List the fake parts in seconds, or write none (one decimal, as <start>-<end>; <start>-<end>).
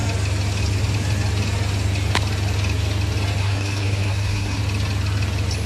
3.4-4.6